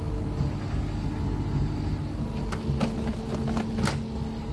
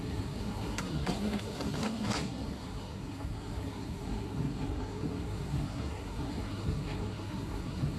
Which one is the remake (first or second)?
second